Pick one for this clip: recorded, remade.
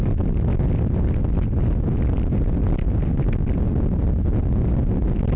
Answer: recorded